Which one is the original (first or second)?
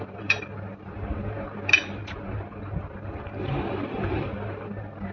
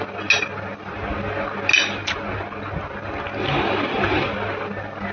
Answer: second